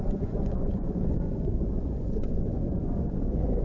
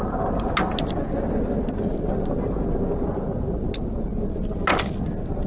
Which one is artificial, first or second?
first